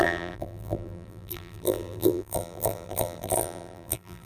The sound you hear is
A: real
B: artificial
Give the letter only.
B